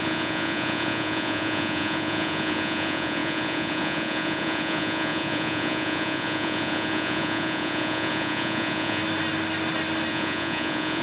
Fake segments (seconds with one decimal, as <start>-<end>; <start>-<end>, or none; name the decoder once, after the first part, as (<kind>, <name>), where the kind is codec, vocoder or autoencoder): 0.0-9.0 (vocoder, Vocos); 10.1-11.0